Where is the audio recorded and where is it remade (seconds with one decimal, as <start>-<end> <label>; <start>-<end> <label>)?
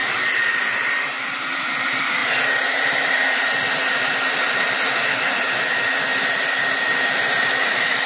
0.0-0.6 remade; 0.6-2.2 recorded; 2.2-4.7 remade; 4.7-8.1 recorded